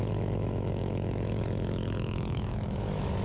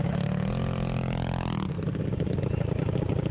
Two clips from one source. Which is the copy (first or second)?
first